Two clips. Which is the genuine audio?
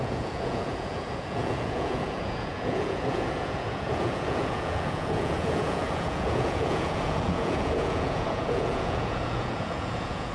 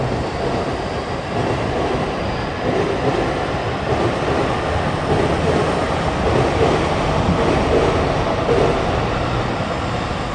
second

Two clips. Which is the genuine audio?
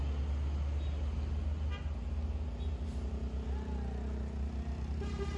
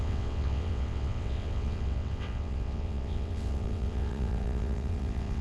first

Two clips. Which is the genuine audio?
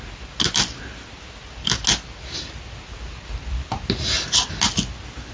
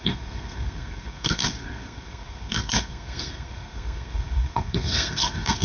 first